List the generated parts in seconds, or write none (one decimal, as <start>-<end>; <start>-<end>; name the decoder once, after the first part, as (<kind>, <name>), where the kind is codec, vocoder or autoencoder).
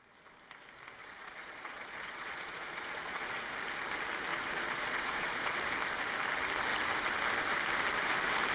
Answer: 1.0-3.4 (vocoder, Vocos); 4.3-5.6